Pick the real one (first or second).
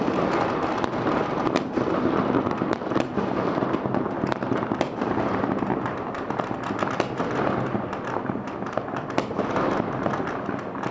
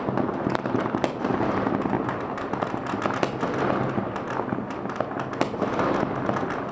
second